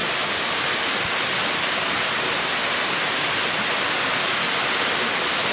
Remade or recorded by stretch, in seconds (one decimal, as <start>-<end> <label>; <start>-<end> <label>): 0.0-5.5 recorded